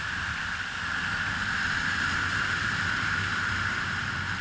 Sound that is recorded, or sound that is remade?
recorded